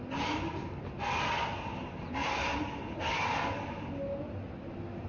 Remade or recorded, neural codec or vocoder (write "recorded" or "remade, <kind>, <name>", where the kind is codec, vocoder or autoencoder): recorded